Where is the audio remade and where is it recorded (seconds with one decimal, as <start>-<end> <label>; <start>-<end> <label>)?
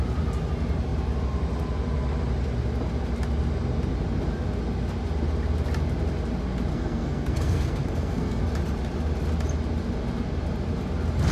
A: 0.0-6.7 recorded; 6.7-8.4 remade; 8.4-11.3 recorded